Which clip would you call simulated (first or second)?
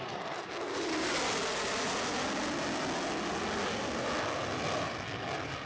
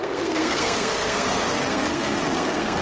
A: second